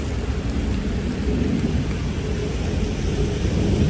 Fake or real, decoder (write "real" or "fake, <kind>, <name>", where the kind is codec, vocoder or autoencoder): real